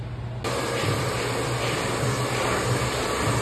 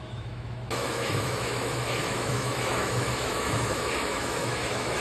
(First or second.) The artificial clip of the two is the second